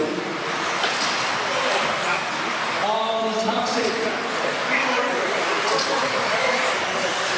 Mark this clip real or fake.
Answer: fake